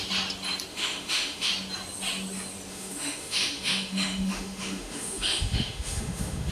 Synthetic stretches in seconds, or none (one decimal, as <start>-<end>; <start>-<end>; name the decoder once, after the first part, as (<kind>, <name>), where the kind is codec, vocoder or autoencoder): 0.7-1.5 (autoencoder, DAC-VAE); 2.7-6.5